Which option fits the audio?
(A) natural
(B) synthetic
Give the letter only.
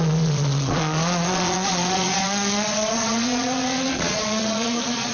B